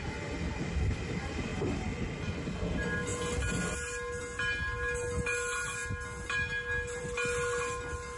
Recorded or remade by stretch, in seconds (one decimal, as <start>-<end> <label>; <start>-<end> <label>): 0.0-8.2 recorded